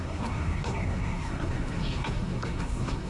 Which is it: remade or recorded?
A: remade